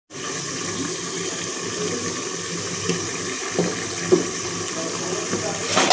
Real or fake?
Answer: real